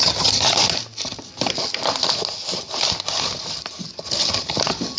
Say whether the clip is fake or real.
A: real